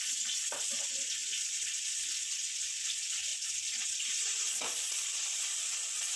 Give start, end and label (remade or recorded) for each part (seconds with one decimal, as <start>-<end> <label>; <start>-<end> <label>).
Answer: 0.0-6.2 remade